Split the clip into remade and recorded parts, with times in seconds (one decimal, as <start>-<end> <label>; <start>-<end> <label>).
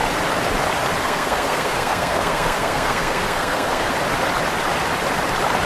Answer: 0.0-1.0 recorded; 1.0-3.9 remade; 3.9-5.7 recorded